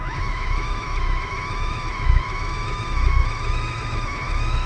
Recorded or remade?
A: remade